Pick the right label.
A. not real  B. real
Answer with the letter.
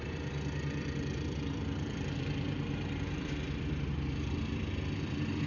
A